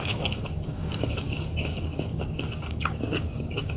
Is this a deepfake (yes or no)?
yes